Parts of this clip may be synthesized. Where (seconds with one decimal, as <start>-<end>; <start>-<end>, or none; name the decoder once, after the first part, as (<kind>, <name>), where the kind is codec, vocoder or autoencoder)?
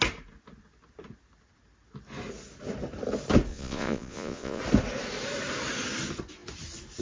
3.5-4.6 (vocoder, Vocos)